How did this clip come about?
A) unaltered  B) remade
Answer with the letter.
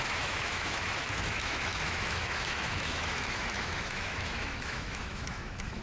B